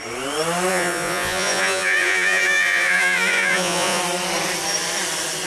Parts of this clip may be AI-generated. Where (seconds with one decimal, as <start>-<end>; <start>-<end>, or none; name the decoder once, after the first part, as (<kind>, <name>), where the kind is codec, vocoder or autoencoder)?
0.7-4.0 (vocoder, Vocos)